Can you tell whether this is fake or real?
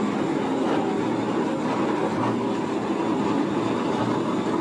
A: real